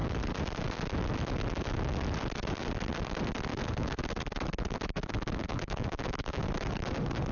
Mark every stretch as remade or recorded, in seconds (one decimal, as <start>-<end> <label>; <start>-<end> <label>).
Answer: 0.0-3.5 recorded; 3.5-4.0 remade; 4.0-5.0 recorded; 5.0-6.5 remade; 6.5-7.3 recorded